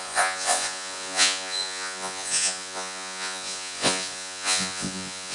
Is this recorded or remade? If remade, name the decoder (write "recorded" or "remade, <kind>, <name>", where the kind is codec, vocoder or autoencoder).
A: remade, vocoder, Vocos